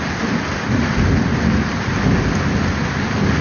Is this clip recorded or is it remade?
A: recorded